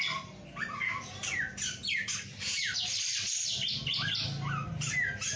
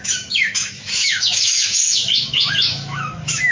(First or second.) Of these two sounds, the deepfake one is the second